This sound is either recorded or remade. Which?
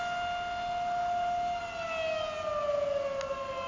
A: recorded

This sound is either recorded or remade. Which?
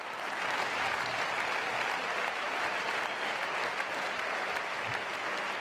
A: recorded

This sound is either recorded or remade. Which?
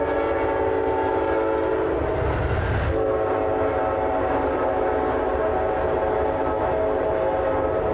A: recorded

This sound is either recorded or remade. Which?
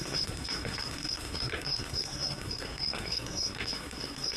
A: remade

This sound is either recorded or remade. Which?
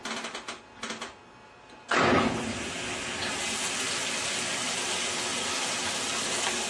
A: recorded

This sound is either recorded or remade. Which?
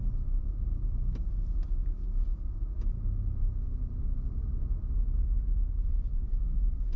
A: recorded